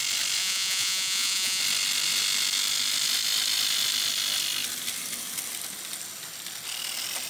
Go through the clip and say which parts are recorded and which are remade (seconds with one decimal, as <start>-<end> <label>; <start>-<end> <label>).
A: 0.0-0.4 recorded; 0.4-1.6 remade; 1.6-7.3 recorded